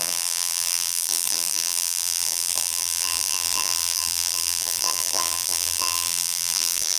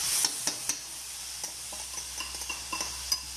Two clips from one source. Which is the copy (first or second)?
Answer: first